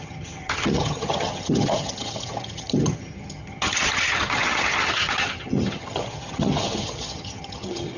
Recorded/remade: remade